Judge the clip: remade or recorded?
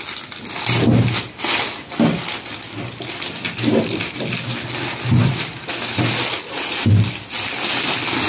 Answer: recorded